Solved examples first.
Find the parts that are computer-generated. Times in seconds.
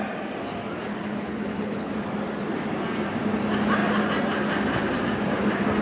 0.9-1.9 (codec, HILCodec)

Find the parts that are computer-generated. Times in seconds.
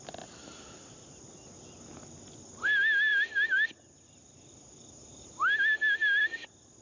none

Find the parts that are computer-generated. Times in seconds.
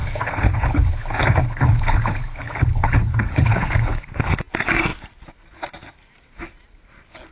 0.0-4.4 (codec, HILCodec)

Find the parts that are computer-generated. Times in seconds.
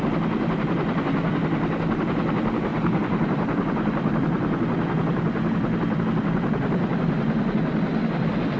none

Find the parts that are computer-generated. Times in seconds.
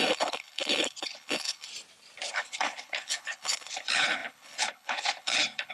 0.0-1.7 (codec, HILCodec); 2.3-5.7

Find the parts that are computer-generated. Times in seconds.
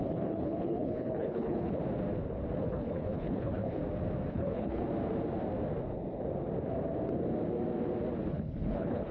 0.0-1.8 (codec, HILCodec); 2.6-3.8; 4.3-4.8; 8.3-9.1